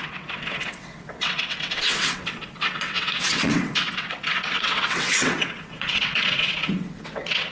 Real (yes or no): no